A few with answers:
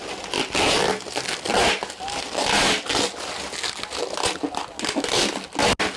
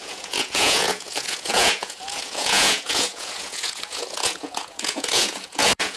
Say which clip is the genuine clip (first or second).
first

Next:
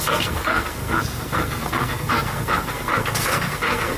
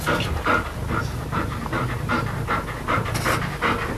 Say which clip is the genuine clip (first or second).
second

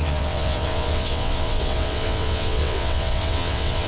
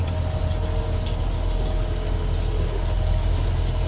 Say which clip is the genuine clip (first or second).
second